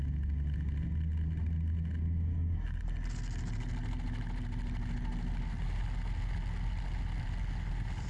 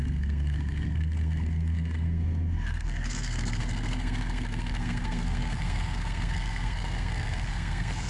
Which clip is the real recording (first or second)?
first